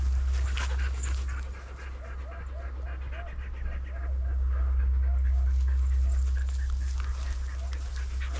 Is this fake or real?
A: real